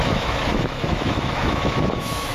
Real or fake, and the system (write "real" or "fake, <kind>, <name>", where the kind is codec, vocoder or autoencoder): fake, autoencoder, DAC-VAE